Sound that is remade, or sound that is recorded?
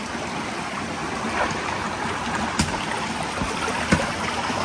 recorded